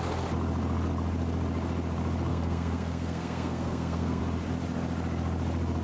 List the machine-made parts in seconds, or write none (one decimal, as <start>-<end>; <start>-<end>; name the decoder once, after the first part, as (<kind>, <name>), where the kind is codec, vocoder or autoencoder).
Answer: 2.3-4.2 (codec, SNAC)

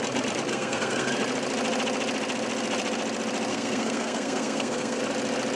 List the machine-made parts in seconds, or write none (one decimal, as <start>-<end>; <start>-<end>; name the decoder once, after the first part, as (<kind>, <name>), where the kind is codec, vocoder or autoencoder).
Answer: 0.5-1.1 (codec, SNAC); 3.5-5.0

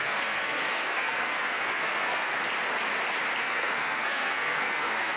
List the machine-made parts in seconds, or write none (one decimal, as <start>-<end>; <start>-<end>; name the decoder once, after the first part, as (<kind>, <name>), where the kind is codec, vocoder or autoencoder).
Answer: 0.0-2.3 (codec, SNAC); 3.4-5.2

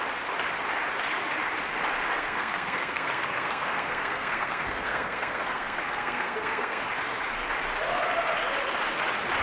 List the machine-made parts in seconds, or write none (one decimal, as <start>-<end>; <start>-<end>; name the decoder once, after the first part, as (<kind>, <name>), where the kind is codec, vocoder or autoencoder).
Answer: 2.1-6.8 (codec, SNAC)